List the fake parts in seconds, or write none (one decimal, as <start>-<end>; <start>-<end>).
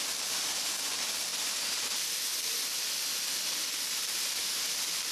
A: none